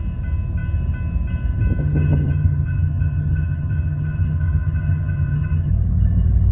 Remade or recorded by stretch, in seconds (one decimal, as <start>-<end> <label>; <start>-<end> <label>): 0.0-1.8 recorded; 1.8-5.7 remade; 5.7-6.5 recorded